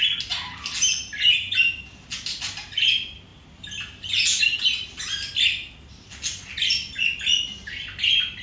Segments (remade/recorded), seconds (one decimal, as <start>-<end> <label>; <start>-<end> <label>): 0.0-8.4 recorded